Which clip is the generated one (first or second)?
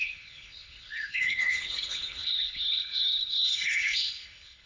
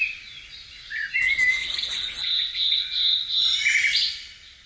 first